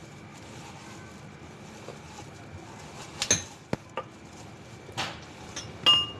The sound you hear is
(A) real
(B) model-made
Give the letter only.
A